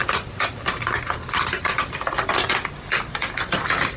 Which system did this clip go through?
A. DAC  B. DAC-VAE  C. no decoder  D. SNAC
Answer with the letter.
C